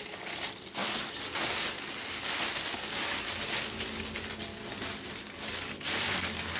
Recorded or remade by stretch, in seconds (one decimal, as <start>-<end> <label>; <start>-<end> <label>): 0.0-6.6 recorded